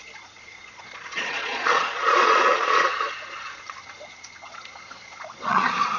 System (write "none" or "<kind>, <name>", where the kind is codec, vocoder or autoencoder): vocoder, Vocos